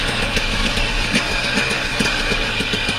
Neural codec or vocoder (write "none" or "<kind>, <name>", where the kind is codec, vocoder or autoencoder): codec, DAC